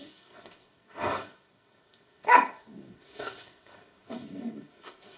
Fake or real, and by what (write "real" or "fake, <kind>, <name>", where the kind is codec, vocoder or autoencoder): fake, codec, SNAC